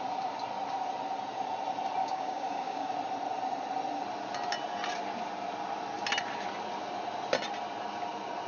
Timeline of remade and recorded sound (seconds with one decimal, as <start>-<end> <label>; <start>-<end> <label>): 0.0-2.0 recorded; 2.0-2.9 remade; 2.9-8.5 recorded